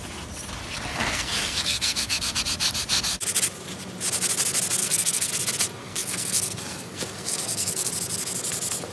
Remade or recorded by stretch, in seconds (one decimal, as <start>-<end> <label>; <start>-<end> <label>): 0.0-0.9 recorded; 0.9-2.4 remade; 2.4-4.8 recorded; 4.8-5.3 remade; 5.3-5.8 recorded; 5.8-7.9 remade; 7.9-8.9 recorded